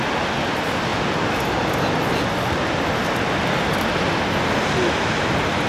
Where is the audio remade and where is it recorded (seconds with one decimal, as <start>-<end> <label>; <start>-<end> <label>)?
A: 0.0-5.7 recorded

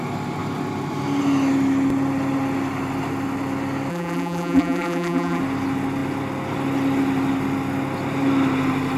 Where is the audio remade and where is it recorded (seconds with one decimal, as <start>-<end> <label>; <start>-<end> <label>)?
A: 0.0-3.9 recorded; 3.9-5.4 remade; 5.4-9.0 recorded